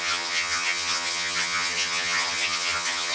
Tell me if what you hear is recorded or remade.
remade